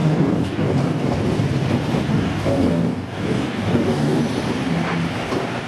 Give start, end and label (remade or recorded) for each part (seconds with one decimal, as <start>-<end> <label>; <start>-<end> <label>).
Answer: 0.0-1.2 remade; 1.2-2.1 recorded; 2.1-4.2 remade; 4.2-5.7 recorded